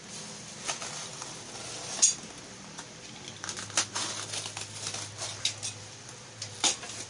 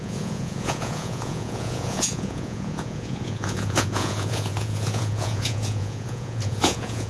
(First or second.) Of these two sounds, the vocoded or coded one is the second